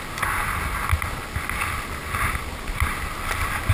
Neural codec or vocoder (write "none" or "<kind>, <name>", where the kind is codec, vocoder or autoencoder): none